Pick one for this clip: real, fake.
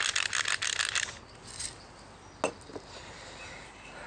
real